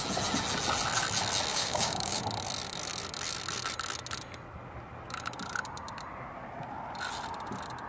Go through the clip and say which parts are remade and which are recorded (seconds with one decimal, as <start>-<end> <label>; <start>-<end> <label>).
0.0-1.5 recorded; 1.5-2.2 remade; 2.2-7.9 recorded